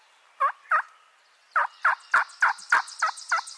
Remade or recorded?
recorded